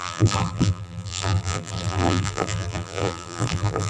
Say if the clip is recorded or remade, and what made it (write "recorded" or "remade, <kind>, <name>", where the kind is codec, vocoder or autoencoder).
remade, vocoder, BigVGAN v2